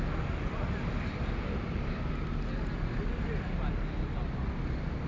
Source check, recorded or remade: recorded